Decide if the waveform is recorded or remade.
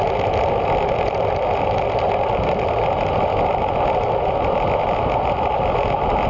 recorded